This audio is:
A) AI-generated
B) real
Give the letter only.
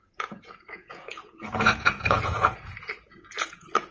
A